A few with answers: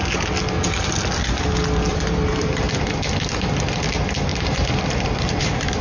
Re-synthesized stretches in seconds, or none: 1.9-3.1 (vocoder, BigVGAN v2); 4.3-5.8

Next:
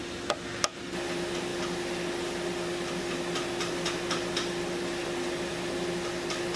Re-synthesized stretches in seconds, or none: none

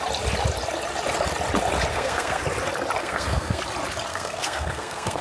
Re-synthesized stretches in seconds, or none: 1.9-2.4 (codec, SNAC); 3.0-3.6; 4.1-5.2

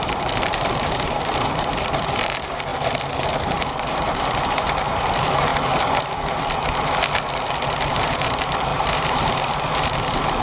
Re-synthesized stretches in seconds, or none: 0.0-2.7 (vocoder, BigVGAN v2); 3.4-5.5; 7.9-10.4